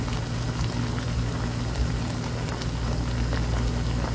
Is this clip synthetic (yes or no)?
no